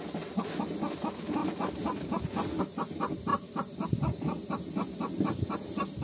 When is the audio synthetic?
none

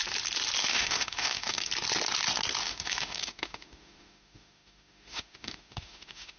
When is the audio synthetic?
0.6-1.7 (autoencoder, DAC-VAE); 2.6-6.4

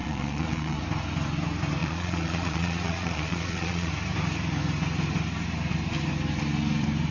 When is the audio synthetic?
0.0-0.8 (vocoder, Vocos); 1.8-3.9

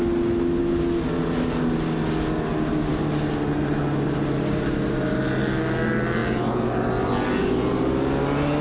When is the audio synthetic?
none

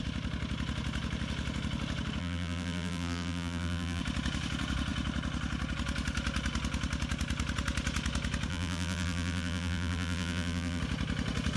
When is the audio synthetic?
2.2-4.0 (vocoder, BigVGAN v2); 8.5-10.8

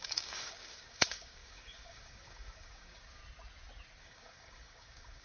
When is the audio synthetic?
0.0-3.2 (codec, DAC); 4.0-5.2

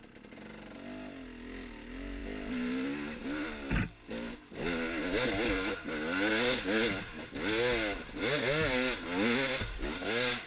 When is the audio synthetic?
none

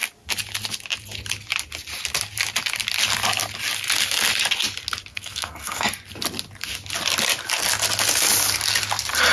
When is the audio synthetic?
5.1-5.9 (codec, SNAC)